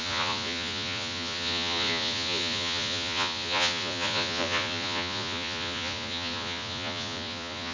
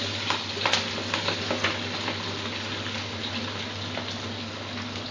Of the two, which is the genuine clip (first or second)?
second